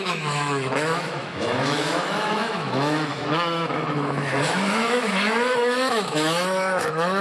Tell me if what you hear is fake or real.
fake